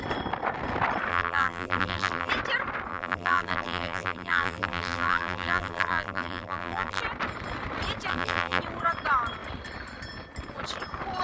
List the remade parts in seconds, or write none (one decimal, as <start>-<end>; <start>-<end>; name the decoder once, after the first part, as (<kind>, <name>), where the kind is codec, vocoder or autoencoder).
1.1-2.3 (vocoder, BigVGAN v2); 2.9-7.0; 8.1-8.6